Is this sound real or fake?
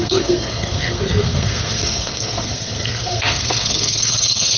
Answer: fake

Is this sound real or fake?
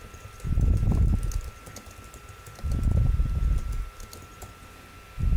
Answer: real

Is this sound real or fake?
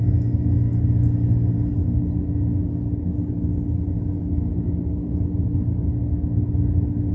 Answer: real